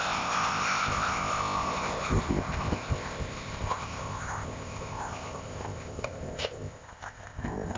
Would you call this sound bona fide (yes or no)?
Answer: no